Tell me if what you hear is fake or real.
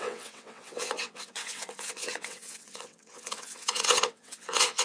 fake